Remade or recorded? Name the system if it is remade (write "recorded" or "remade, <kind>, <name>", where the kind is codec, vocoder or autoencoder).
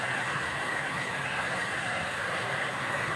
remade, codec, SNAC